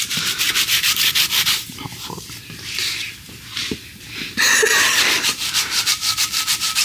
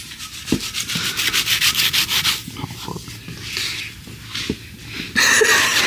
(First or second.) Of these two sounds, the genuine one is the second